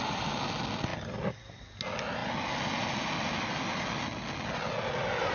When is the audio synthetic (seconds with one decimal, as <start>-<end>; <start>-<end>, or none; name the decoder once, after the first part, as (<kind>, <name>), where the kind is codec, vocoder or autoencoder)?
none